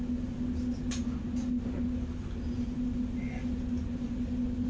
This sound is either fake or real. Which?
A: real